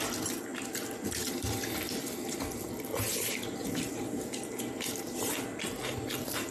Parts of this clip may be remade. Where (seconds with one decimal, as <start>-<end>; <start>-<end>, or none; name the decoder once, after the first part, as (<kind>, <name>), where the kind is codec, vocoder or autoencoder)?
3.6-5.3 (vocoder, BigVGAN v2)